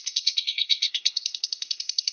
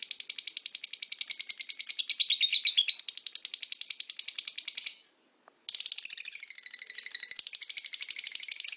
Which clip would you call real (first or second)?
second